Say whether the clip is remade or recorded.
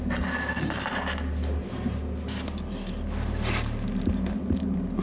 recorded